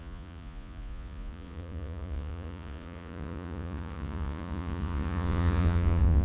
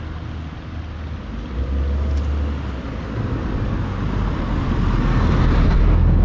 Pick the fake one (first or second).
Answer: first